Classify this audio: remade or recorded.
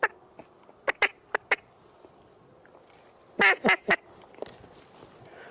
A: recorded